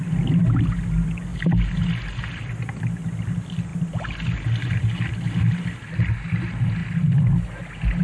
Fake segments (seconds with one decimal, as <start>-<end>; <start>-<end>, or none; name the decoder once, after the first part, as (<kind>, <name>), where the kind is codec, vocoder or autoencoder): none